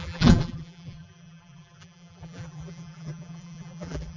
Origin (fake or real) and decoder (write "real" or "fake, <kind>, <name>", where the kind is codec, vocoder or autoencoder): fake, vocoder, BigVGAN v2